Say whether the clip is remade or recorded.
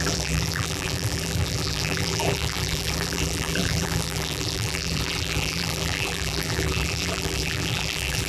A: remade